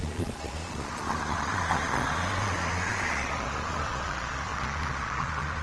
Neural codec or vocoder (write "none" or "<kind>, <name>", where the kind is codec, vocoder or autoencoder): vocoder, Vocos